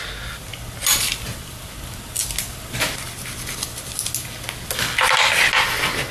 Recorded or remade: recorded